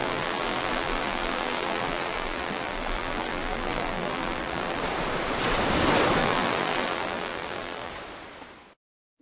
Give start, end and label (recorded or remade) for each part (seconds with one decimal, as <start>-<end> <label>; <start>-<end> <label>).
0.0-4.8 remade; 4.8-6.2 recorded; 6.2-7.9 remade; 7.9-9.2 recorded